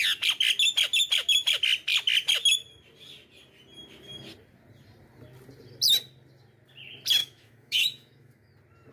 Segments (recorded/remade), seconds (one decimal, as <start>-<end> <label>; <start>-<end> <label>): 0.0-7.2 recorded; 7.2-8.5 remade; 8.5-8.9 recorded